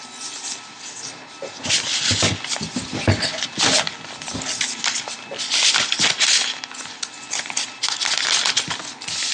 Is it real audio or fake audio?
real